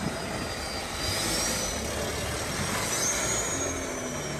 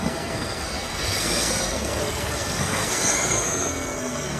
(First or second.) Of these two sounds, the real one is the first